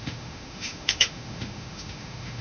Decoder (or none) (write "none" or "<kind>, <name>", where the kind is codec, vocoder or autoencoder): autoencoder, DAC-VAE